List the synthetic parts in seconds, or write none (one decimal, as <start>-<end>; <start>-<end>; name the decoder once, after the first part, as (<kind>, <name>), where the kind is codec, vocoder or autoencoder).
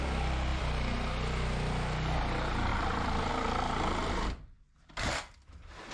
0.5-2.2 (vocoder, BigVGAN v2); 2.7-3.3; 4.0-5.1